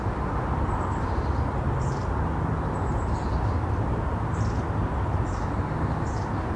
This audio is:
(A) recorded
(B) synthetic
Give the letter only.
A